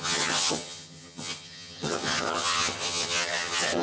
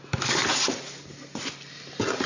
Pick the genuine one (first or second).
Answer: second